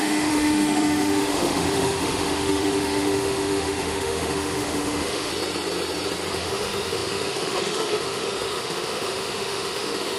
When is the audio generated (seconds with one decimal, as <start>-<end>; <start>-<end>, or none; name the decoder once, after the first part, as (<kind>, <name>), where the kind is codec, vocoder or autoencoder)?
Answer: 0.0-5.3 (autoencoder, DAC-VAE); 6.3-10.2